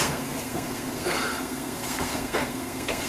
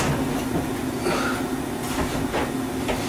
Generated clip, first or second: first